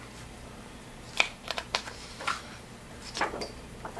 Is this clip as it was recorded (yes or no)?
no